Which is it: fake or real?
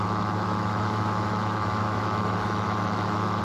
fake